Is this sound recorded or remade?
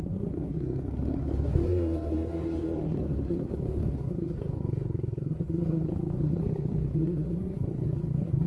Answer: remade